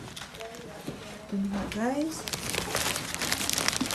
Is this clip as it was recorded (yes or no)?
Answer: yes